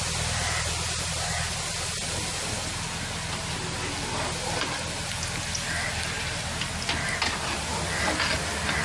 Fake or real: real